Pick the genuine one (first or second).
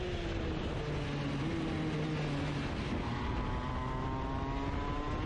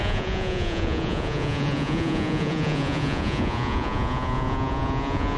first